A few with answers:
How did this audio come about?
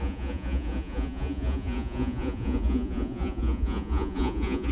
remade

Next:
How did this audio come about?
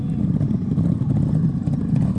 recorded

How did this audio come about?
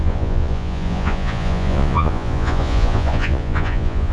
remade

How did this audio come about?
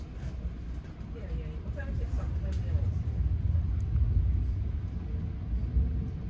recorded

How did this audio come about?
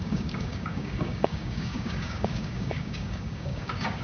remade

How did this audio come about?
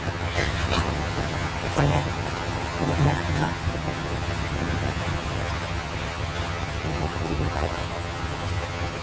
remade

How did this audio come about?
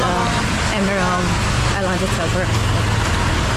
recorded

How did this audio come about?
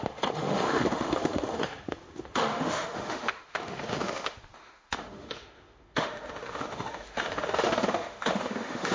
remade